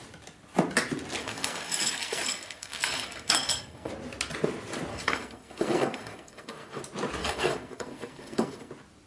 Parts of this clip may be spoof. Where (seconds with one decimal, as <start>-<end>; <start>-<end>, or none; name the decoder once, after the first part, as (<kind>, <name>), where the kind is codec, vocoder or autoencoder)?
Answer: 1.2-3.9 (codec, SNAC); 4.9-6.8; 7.2-8.7